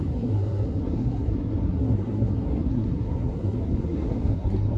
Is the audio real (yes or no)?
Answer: no